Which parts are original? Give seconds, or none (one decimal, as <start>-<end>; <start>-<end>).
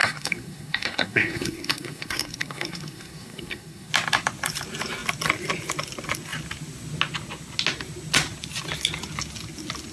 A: 3.9-9.9